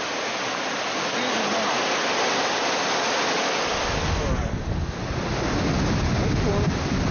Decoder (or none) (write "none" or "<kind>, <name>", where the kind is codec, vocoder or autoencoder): none